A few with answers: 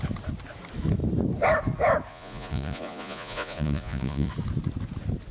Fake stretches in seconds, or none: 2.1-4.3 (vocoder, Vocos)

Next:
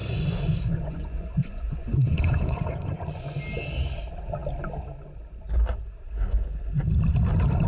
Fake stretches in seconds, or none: 0.0-3.4 (vocoder, Vocos)

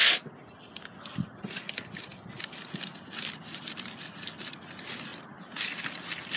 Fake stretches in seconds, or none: none

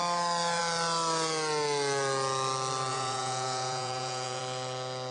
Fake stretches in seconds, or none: 2.9-4.4 (vocoder, Vocos)

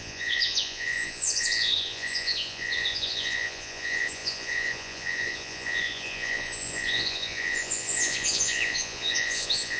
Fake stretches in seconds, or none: 0.0-9.8 (vocoder, Vocos)

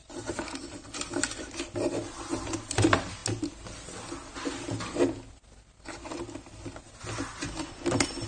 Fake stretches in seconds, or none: none

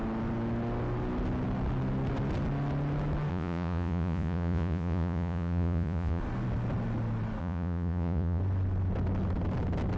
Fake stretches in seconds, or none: 3.3-6.2 (vocoder, Vocos); 7.4-8.4